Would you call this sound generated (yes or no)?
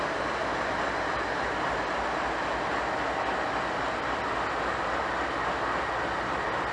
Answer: no